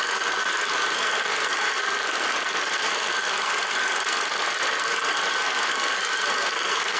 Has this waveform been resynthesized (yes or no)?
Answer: yes